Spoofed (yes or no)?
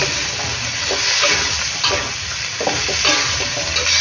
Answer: no